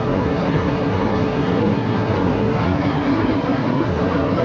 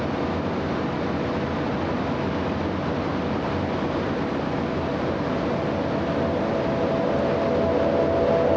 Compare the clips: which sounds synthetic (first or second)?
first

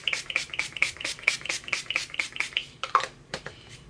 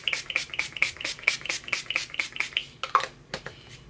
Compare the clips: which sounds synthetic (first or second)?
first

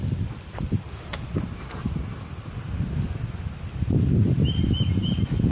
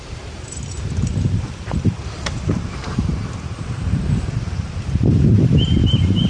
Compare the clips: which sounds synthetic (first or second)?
second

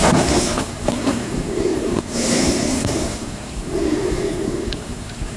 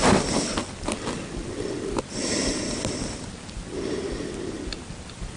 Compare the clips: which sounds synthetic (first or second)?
first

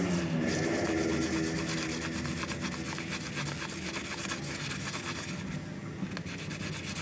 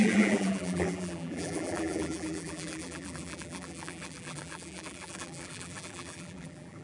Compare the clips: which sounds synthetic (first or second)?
second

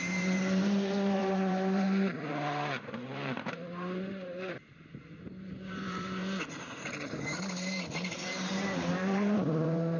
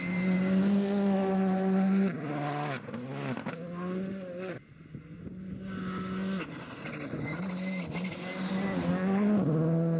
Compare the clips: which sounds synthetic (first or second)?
first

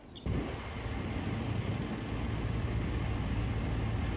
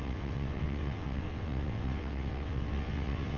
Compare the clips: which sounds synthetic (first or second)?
second